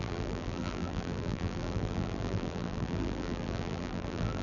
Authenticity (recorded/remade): remade